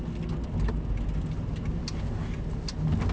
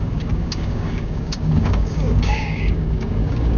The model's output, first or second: second